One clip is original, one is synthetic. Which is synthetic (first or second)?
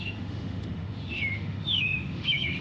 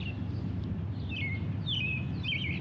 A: first